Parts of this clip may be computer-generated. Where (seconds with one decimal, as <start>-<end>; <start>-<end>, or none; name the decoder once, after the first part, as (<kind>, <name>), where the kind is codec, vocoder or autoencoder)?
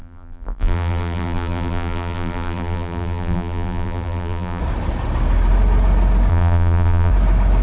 0.0-4.6 (vocoder, BigVGAN v2); 6.3-7.1